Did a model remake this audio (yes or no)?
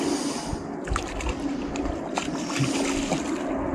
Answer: no